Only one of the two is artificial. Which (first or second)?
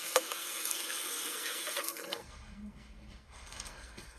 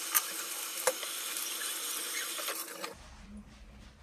first